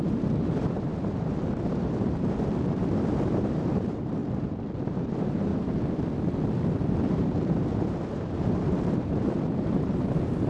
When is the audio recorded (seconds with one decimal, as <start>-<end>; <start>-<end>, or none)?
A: 4.2-4.9; 5.5-7.1

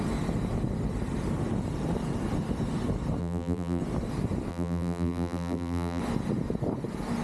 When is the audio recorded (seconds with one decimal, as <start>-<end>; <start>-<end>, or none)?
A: 0.0-3.2; 3.8-4.5; 6.0-7.2

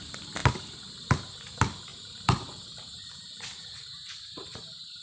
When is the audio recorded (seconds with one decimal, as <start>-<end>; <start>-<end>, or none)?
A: 0.0-1.9

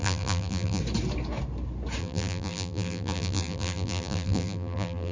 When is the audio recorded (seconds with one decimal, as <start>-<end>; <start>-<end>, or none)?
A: 0.8-2.0